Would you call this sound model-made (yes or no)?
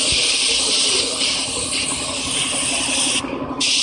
no